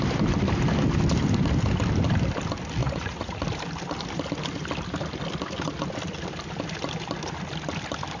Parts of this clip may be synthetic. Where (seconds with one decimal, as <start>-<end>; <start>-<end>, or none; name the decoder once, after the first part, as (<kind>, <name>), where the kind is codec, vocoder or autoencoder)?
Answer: 2.8-3.4 (vocoder, Vocos)